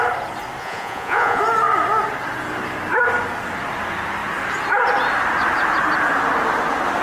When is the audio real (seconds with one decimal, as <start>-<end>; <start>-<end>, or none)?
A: 0.0-0.6; 1.4-7.0